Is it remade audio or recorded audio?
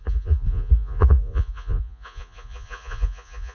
remade